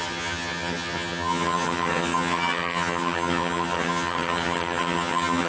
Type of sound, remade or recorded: remade